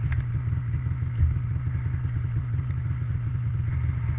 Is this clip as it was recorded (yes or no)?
yes